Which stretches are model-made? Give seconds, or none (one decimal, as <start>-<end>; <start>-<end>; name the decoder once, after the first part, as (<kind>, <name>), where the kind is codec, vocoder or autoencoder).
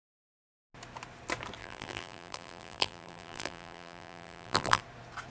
1.6-4.8 (vocoder, BigVGAN v2)